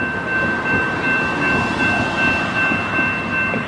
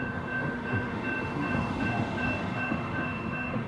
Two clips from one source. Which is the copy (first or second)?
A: second